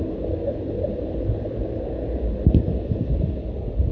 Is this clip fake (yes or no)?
no